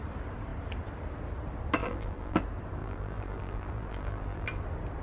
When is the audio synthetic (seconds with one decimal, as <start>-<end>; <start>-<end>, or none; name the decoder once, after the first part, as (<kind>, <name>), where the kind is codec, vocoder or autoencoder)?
1.8-2.4 (vocoder, BigVGAN v2); 2.8-4.6